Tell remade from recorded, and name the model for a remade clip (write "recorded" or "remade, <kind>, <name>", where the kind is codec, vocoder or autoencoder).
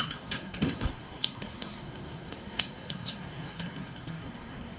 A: remade, codec, SNAC